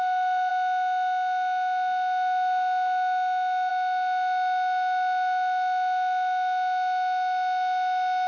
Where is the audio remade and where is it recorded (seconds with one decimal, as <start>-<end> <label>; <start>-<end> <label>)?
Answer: 0.0-8.3 recorded